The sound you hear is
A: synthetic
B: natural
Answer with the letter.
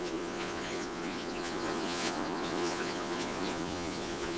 A